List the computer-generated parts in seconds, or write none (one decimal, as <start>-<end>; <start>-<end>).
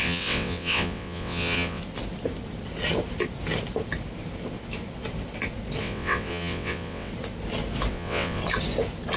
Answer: 0.0-1.8; 5.8-7.1; 7.9-8.4